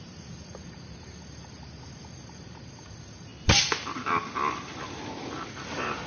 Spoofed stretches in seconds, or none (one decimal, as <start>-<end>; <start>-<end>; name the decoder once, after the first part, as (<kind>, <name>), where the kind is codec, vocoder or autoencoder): 0.0-3.3 (vocoder, BigVGAN v2); 5.5-6.1

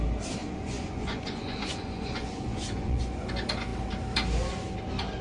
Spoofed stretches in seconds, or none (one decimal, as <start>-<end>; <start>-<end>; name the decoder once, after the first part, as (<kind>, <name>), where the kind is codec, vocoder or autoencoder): 0.4-3.3 (vocoder, Vocos)

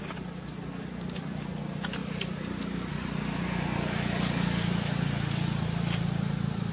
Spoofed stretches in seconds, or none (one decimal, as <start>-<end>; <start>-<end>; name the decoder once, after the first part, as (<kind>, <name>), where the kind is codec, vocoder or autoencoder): 0.0-6.7 (vocoder, BigVGAN v2)

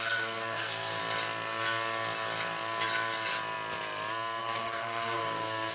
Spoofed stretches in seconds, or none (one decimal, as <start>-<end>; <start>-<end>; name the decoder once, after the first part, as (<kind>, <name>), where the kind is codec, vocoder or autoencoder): 0.0-1.0 (codec, SNAC); 4.4-5.7